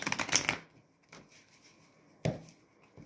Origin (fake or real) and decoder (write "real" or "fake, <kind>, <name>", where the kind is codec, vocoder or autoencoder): real